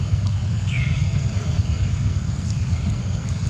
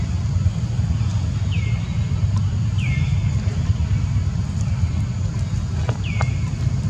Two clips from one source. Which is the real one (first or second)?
second